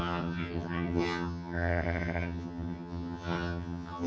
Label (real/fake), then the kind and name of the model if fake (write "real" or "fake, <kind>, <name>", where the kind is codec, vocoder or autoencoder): fake, vocoder, HiFi-GAN